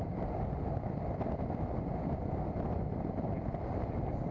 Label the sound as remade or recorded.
recorded